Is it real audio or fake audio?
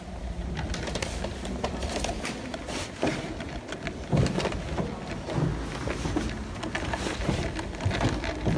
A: real